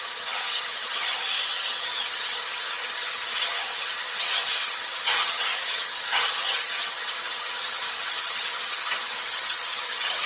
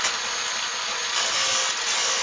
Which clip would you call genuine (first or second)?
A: second